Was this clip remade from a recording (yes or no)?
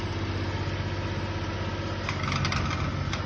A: no